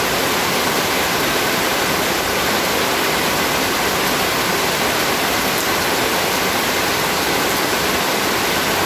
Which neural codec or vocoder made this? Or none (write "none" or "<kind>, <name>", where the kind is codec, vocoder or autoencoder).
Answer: none